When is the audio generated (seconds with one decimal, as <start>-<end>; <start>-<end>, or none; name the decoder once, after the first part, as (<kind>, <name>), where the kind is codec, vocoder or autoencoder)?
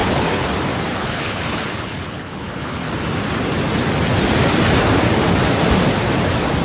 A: 0.0-0.5 (codec, HILCodec); 0.9-2.9